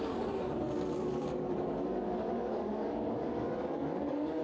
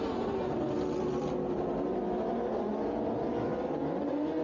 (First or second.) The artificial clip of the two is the first